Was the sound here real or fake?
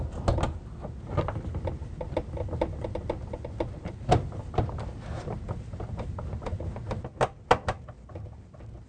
real